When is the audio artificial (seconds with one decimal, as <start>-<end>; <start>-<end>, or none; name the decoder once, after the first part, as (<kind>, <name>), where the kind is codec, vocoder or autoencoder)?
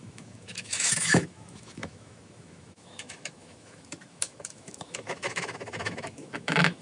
0.0-6.8 (autoencoder, DAC-VAE)